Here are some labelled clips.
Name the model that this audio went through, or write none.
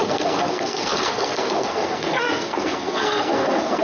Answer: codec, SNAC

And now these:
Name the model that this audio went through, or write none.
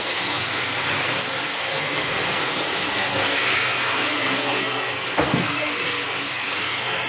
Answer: codec, SNAC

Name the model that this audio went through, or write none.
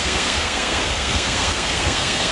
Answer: codec, SNAC